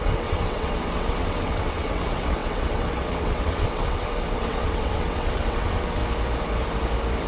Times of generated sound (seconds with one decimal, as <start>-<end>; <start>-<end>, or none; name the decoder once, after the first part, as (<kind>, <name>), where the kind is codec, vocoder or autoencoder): 0.0-6.0 (vocoder, WaveNeXt)